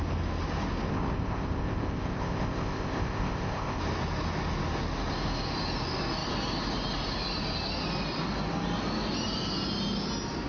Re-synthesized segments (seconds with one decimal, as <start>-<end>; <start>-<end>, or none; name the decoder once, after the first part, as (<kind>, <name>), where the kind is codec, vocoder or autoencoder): 0.9-3.8 (codec, ZipCodec)